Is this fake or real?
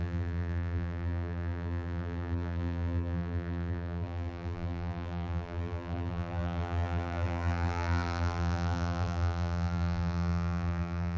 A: fake